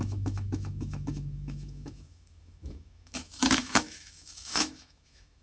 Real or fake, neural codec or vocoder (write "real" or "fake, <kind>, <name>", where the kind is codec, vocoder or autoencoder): fake, autoencoder, DAC-VAE